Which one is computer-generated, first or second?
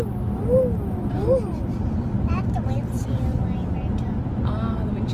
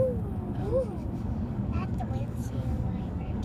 second